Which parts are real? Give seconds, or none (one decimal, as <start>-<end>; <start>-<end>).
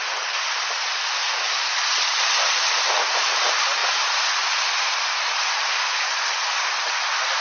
0.0-7.4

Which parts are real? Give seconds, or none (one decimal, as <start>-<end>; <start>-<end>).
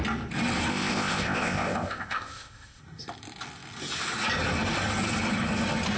0.0-0.7; 2.8-6.0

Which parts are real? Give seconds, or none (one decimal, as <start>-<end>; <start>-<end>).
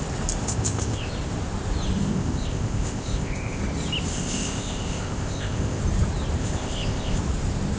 0.0-0.4; 1.1-2.0; 3.6-4.1; 5.8-6.4; 7.2-7.8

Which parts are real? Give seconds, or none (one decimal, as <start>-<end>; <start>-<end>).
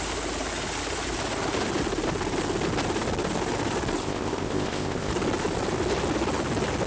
0.0-4.0; 5.1-6.9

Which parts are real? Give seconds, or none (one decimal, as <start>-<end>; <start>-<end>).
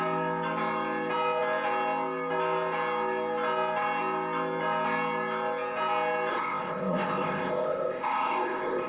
0.0-6.3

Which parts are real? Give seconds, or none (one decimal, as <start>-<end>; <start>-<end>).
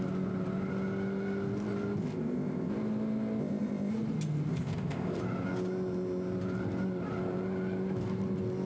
0.0-2.0; 2.7-3.4; 3.9-4.5; 5.2-8.7